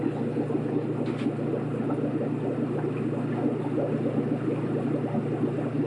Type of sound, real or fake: real